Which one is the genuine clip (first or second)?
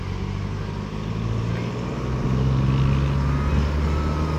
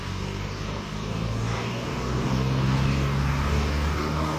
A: first